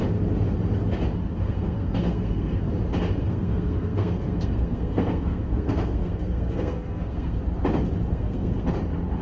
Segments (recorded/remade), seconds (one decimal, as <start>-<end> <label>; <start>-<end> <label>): 0.0-1.4 recorded; 1.4-2.6 remade; 2.6-3.2 recorded; 3.2-7.4 remade; 7.4-8.1 recorded; 8.1-8.7 remade; 8.7-9.2 recorded